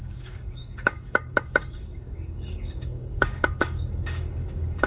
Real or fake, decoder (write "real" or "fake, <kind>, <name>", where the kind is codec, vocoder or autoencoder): fake, codec, DAC